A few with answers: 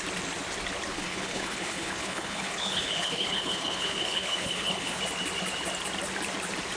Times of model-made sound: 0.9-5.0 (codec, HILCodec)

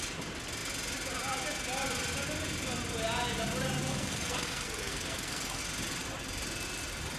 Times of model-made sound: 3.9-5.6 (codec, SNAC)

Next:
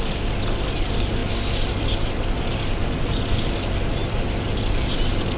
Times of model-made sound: none